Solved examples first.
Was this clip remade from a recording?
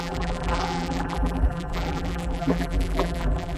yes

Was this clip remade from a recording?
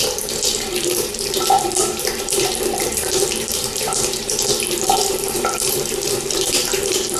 yes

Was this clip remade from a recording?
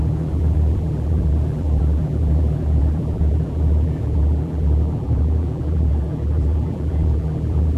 yes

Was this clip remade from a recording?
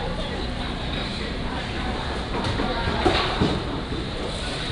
yes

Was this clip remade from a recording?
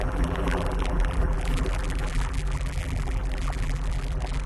yes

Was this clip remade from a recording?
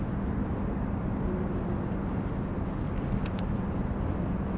no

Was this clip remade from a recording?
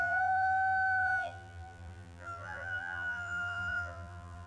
yes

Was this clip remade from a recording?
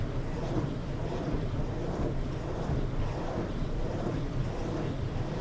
yes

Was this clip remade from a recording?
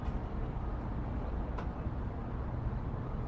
no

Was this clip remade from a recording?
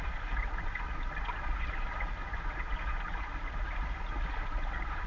no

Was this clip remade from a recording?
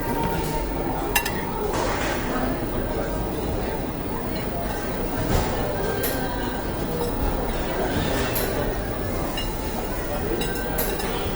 no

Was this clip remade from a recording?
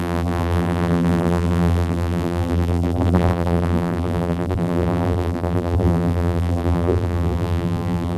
yes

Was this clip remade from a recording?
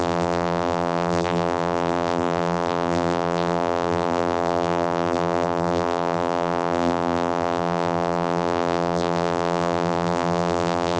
yes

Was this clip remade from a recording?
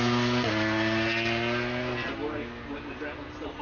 no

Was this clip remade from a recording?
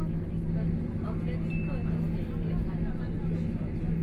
no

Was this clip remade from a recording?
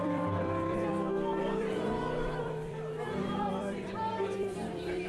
yes